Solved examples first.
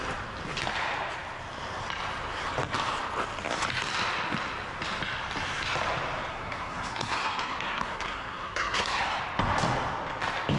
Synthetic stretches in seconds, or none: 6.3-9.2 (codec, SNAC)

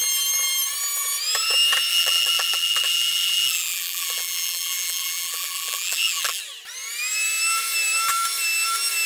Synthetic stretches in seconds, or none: 1.9-6.4 (vocoder, BigVGAN v2)

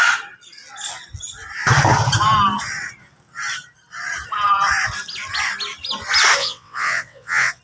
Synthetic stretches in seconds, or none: 6.4-7.6 (vocoder, WaveNeXt)

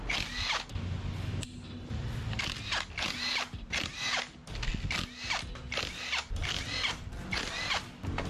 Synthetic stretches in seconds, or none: none